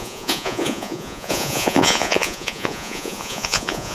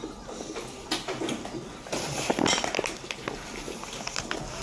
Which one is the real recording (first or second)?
second